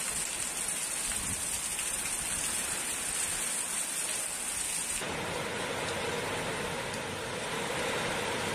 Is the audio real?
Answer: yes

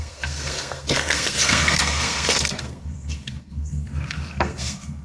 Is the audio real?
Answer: no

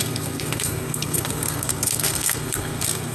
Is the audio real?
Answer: no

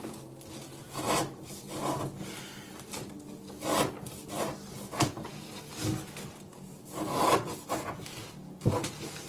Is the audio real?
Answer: yes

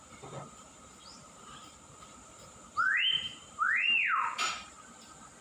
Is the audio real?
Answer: no